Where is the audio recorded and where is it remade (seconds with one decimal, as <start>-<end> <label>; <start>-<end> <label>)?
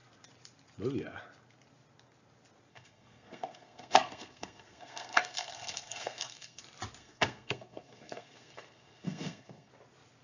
0.0-2.7 recorded; 2.7-6.6 remade; 6.6-7.0 recorded; 7.0-9.7 remade; 9.7-10.2 recorded